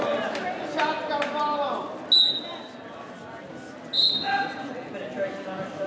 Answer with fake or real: real